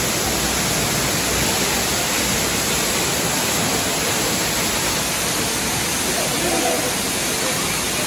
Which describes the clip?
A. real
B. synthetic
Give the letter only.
A